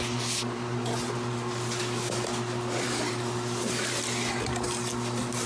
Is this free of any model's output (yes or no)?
yes